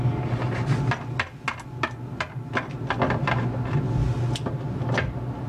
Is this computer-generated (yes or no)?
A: no